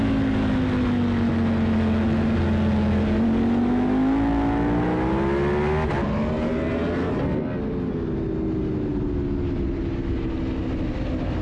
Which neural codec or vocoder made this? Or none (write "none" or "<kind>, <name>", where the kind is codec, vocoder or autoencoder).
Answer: none